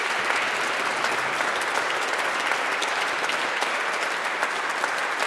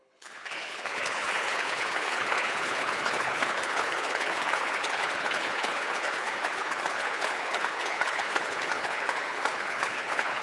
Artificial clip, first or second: second